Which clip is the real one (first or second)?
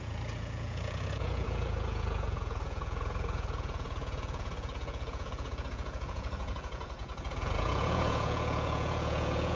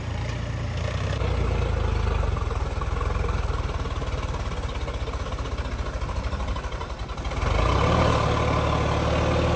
second